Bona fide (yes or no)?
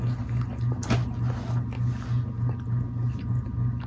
yes